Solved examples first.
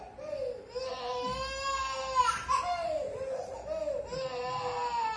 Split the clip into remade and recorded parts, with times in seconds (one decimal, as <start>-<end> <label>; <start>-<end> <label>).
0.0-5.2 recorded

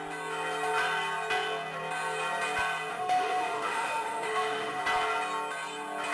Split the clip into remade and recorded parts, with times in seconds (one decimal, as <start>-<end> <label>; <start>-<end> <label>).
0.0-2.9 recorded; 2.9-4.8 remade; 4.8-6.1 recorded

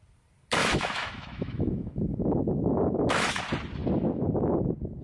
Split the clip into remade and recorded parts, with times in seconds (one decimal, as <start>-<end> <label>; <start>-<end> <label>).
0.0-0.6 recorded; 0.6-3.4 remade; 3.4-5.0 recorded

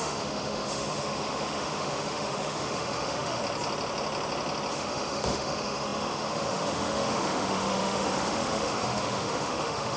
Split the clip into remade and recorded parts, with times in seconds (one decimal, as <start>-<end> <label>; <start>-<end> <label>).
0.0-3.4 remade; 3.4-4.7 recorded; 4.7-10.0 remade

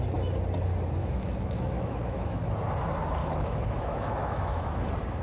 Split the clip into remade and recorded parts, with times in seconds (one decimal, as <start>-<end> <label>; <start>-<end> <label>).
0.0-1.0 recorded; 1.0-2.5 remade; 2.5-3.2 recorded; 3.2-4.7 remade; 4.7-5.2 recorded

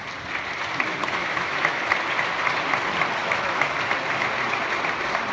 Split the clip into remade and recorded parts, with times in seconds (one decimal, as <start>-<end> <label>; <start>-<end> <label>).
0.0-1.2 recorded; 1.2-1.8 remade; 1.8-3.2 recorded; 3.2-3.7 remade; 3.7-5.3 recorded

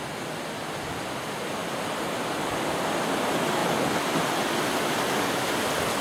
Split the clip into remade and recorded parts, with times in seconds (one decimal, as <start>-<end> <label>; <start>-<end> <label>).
0.0-6.0 recorded

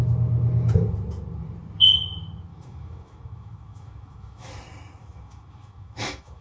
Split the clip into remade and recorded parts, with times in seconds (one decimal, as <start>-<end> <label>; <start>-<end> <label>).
0.0-2.5 recorded; 2.5-4.5 remade; 4.5-5.0 recorded; 5.0-6.4 remade